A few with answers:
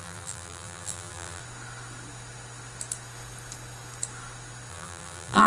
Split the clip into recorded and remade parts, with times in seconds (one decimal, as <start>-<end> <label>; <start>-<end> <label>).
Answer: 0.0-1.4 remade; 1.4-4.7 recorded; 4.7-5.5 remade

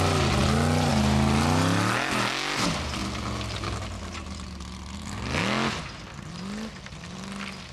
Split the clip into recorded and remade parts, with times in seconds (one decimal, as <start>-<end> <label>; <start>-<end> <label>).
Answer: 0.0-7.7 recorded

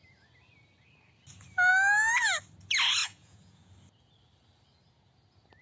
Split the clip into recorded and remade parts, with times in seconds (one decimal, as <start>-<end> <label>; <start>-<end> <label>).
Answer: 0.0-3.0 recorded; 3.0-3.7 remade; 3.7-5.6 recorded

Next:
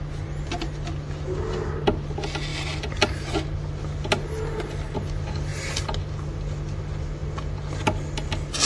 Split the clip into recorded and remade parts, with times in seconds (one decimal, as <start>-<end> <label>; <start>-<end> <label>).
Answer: 0.0-8.7 recorded

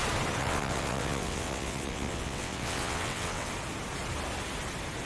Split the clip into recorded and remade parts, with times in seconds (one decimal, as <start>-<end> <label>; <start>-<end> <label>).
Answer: 0.0-0.4 recorded; 0.4-3.5 remade; 3.5-5.1 recorded

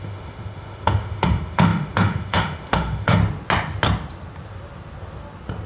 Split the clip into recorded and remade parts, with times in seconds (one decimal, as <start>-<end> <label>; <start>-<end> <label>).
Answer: 0.0-3.2 remade; 3.2-5.7 recorded

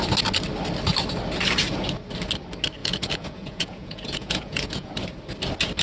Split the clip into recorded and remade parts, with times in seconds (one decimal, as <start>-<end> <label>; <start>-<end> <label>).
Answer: 0.0-2.8 recorded; 2.8-4.9 remade; 4.9-5.8 recorded